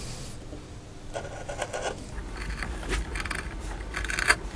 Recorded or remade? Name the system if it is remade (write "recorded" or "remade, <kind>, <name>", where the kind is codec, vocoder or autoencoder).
recorded